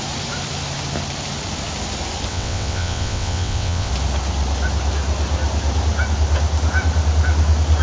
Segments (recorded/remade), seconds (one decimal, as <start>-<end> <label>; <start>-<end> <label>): 0.0-2.3 recorded; 2.3-3.9 remade; 3.9-7.8 recorded